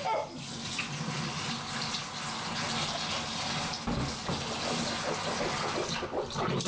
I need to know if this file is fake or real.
real